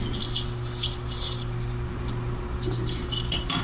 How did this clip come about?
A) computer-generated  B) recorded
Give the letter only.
B